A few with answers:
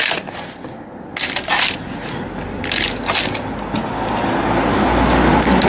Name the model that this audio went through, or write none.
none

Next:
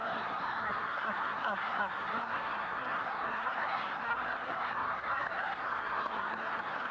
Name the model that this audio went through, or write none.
codec, SNAC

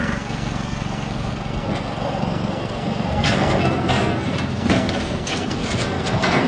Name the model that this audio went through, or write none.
codec, SNAC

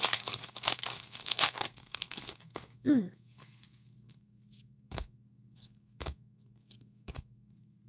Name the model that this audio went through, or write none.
codec, SNAC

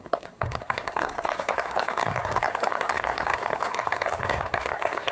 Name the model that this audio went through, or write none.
codec, SNAC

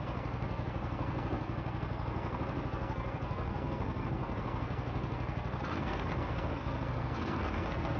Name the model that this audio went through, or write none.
codec, SNAC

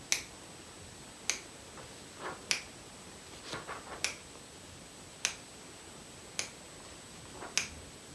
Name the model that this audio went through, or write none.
none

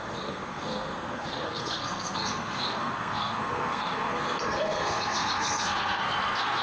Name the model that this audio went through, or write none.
codec, SNAC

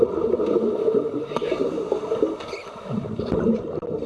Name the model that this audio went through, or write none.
none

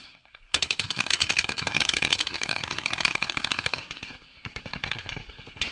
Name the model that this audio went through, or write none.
codec, SNAC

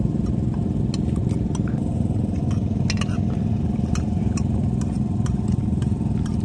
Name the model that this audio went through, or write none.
none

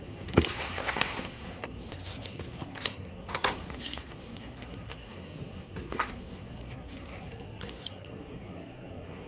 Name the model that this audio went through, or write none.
codec, SNAC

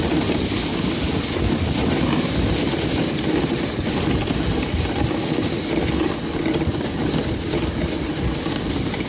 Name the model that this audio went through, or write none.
none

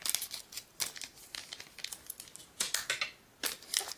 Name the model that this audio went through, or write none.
none